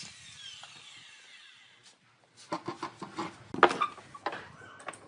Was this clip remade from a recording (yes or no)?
no